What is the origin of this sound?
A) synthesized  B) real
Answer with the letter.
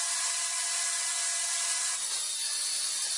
B